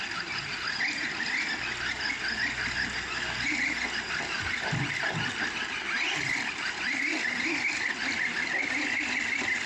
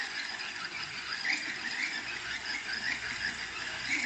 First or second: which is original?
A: first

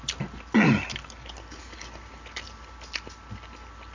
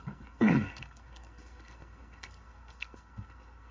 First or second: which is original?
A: first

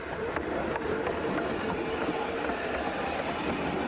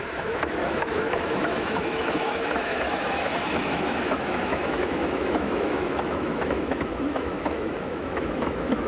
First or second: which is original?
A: first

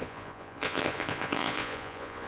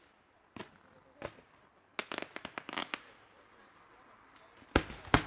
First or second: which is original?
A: second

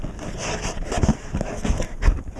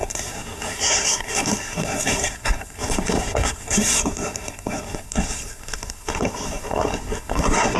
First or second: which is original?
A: first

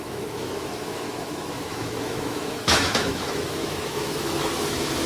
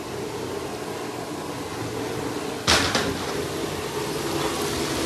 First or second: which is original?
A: second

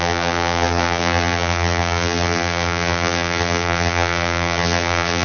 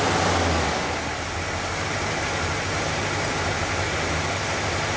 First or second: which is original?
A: second